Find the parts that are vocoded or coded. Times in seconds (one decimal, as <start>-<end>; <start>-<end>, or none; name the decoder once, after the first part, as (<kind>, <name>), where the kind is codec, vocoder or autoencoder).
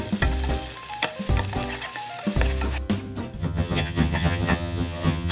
3.4-5.3 (vocoder, HiFi-GAN)